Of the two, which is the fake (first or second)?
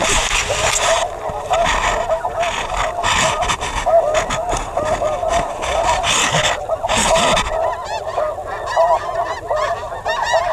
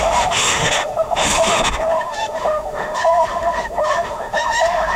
second